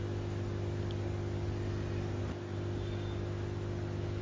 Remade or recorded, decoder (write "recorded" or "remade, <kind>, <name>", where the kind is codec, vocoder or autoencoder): recorded